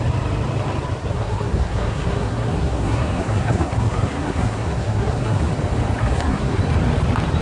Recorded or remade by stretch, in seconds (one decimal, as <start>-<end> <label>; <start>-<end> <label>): 0.0-1.1 recorded; 1.1-5.5 remade; 5.5-6.0 recorded; 6.0-6.6 remade; 6.6-7.4 recorded